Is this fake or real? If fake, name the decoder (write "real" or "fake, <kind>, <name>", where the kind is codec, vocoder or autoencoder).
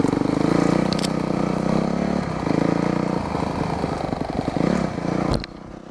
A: real